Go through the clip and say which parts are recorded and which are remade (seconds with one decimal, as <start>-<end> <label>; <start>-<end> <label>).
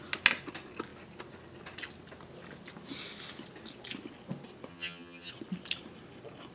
0.0-4.7 recorded; 4.7-5.3 remade; 5.3-6.5 recorded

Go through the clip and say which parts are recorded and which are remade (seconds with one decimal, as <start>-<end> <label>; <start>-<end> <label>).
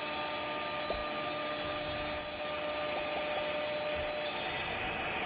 0.0-5.3 recorded